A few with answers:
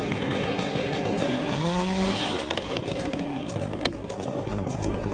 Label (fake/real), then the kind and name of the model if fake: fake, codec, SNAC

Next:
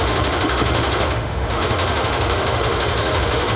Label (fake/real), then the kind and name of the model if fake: fake, autoencoder, DAC-VAE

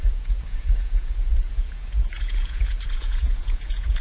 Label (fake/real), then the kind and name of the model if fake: fake, vocoder, Vocos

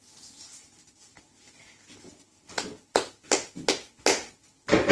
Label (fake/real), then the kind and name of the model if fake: real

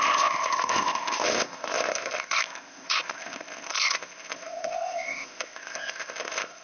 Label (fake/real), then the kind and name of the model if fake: fake, codec, ZipCodec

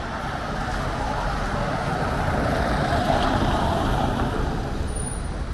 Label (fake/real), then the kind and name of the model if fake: real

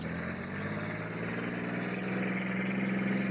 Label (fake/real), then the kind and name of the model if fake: real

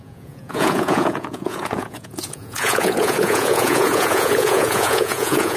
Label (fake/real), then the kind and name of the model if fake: fake, vocoder, Vocos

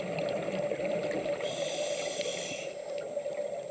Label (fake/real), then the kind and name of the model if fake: real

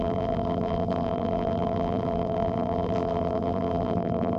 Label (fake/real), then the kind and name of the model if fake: fake, vocoder, BigVGAN v2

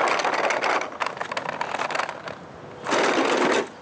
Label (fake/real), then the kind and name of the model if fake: real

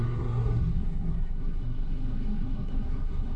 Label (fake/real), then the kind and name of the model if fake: fake, codec, SNAC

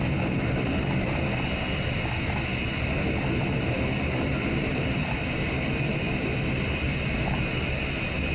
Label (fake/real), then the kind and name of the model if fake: real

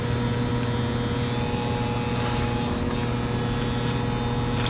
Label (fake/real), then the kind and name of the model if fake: real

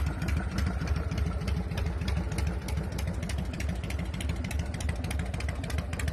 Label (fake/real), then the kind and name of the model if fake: fake, vocoder, BigVGAN v2